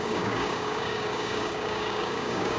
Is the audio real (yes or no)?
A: no